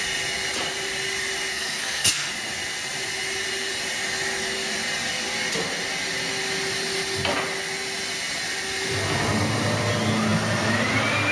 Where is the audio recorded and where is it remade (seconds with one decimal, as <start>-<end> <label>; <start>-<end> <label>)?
0.0-1.5 recorded; 1.5-2.3 remade; 2.3-11.3 recorded